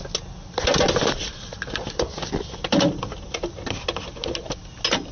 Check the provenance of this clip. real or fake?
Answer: real